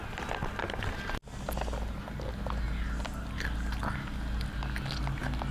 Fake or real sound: real